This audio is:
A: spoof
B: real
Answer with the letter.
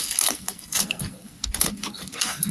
A